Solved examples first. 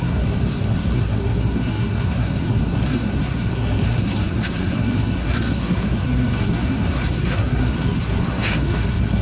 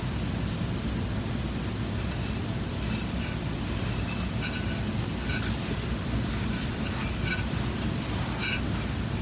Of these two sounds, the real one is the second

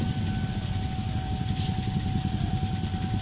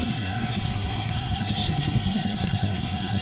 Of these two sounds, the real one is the first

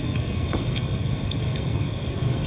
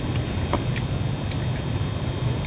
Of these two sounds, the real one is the second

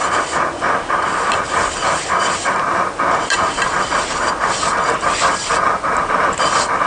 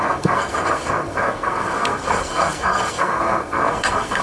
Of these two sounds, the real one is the first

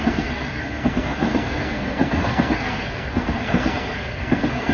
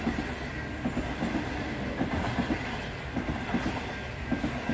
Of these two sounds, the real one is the second